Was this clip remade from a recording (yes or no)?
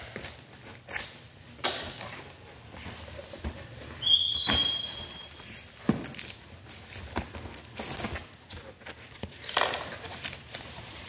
no